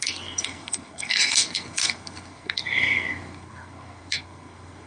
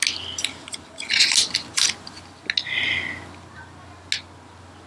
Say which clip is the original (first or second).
second